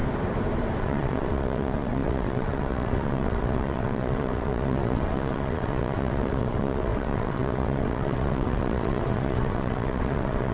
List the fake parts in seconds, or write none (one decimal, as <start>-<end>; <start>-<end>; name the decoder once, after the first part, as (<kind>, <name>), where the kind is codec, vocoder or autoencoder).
0.8-10.5 (vocoder, WaveNeXt)